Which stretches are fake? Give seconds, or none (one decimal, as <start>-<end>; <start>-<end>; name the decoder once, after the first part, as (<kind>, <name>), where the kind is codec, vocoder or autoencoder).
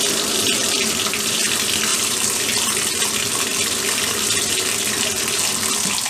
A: 1.9-2.4 (vocoder, BigVGAN v2)